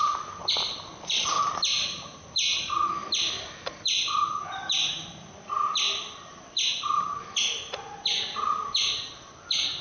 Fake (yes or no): no